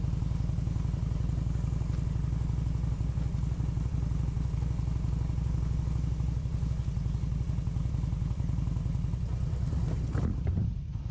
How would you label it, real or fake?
real